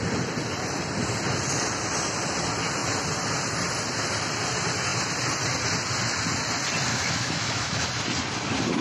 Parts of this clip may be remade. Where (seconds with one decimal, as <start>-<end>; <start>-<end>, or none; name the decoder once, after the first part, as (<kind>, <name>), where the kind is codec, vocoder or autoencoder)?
6.9-7.9 (autoencoder, DAC-VAE)